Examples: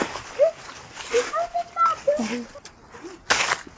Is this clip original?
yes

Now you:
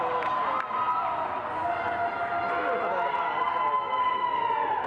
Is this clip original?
yes